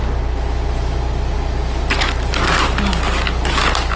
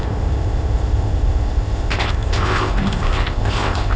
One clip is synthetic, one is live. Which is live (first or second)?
first